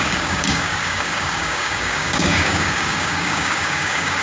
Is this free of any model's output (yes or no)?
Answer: no